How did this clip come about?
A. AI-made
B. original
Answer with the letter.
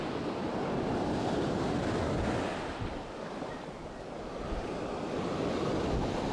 B